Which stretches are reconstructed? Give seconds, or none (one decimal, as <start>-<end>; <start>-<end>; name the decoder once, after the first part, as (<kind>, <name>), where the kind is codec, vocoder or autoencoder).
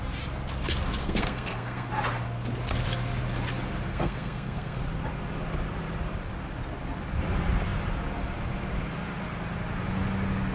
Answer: 1.0-1.9 (codec, SNAC); 3.9-4.8